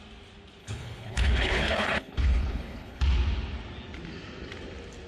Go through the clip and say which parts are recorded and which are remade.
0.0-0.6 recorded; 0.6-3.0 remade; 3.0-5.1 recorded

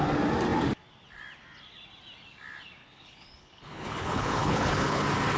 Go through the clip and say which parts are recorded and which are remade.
0.0-2.8 recorded; 2.8-5.0 remade; 5.0-5.4 recorded

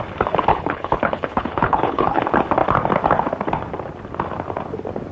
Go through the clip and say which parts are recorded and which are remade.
0.0-0.5 recorded; 0.5-2.2 remade; 2.2-5.1 recorded

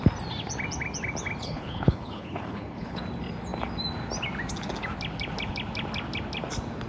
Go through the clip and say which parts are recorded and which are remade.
0.0-1.4 recorded; 1.4-3.0 remade; 3.0-6.9 recorded